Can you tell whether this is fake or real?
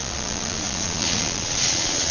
fake